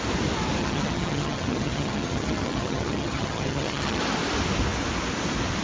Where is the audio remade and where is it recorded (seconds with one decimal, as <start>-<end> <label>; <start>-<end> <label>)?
0.0-0.6 recorded; 0.6-4.0 remade; 4.0-5.6 recorded